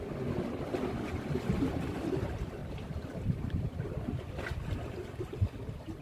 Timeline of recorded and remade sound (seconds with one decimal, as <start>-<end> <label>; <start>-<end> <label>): 0.0-2.6 recorded; 2.6-3.6 remade; 3.6-6.0 recorded